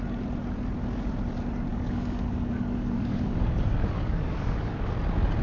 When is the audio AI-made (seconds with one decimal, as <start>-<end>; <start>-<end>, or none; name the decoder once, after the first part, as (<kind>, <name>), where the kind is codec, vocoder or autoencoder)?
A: 1.7-4.9 (codec, DAC)